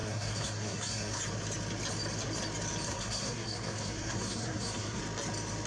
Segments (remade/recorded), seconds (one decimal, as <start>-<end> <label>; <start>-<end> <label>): 0.0-1.2 remade; 1.2-2.9 recorded; 2.9-5.0 remade; 5.0-5.7 recorded